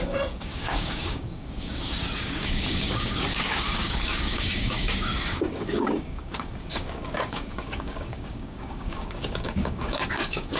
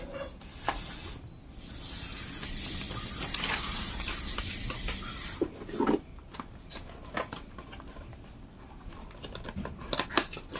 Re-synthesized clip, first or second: first